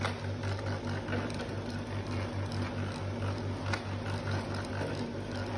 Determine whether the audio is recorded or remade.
recorded